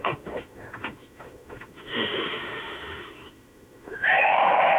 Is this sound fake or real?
fake